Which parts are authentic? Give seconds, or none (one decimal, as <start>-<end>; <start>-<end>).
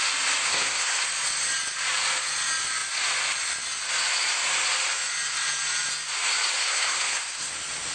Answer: 0.0-0.5; 1.0-6.6; 7.5-7.9